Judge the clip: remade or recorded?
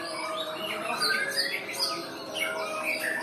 recorded